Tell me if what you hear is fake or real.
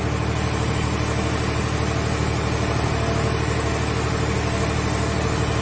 real